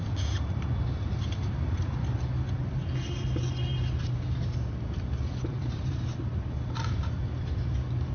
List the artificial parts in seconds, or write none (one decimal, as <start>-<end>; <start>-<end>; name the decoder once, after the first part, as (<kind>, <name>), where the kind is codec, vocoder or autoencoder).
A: 3.7-7.2 (vocoder, BigVGAN v2)